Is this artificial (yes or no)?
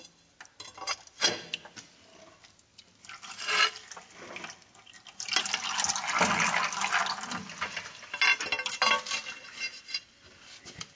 no